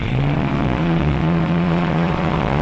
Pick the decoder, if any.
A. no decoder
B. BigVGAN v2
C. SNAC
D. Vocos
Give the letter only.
D